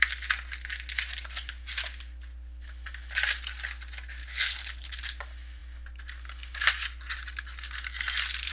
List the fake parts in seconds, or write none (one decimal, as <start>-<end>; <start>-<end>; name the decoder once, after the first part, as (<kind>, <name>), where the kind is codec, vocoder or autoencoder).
4.2-5.0 (codec, HILCodec)